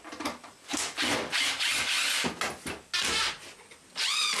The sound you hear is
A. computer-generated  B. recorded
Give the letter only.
B